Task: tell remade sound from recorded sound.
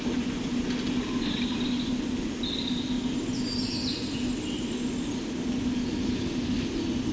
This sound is recorded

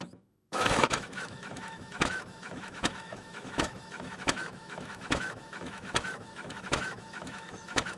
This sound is remade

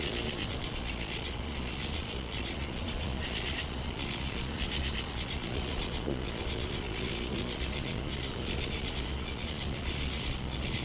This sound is remade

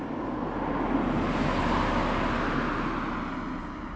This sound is recorded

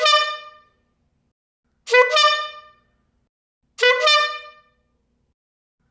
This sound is recorded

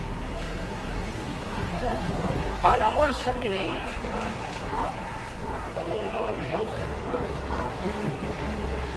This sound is remade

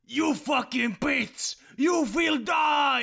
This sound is recorded